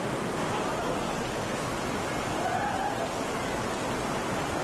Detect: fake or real real